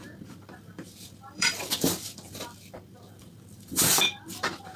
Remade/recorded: remade